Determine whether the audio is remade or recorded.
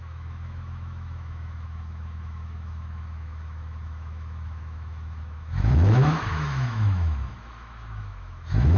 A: remade